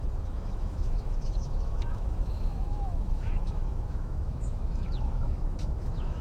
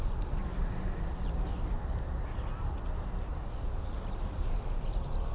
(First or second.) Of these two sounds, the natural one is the second